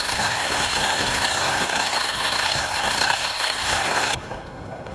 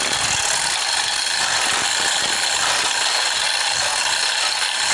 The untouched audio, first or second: second